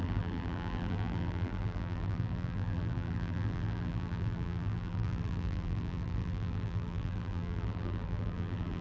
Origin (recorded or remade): remade